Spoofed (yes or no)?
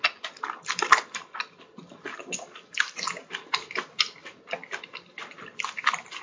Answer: no